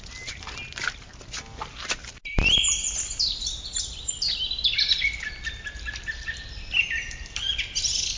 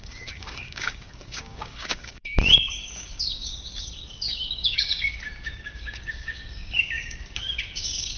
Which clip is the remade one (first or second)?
second